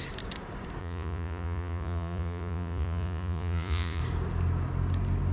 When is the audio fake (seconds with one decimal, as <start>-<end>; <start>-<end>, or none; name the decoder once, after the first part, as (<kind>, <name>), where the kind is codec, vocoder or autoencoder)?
0.8-4.0 (vocoder, Vocos)